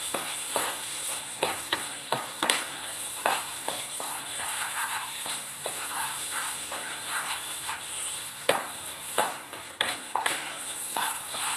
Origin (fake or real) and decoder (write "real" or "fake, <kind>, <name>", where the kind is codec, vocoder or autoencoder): fake, codec, SNAC